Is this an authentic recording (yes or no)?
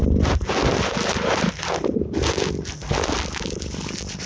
yes